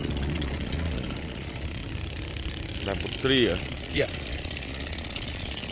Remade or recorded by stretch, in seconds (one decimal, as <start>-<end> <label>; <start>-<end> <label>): 0.0-1.8 remade; 1.8-3.6 recorded; 3.6-5.7 remade